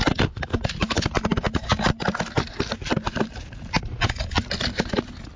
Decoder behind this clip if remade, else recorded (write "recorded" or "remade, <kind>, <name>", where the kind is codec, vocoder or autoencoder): recorded